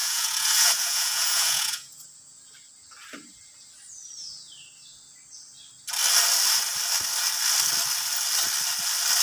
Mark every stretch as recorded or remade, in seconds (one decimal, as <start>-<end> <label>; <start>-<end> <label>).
0.0-2.5 remade; 2.5-9.2 recorded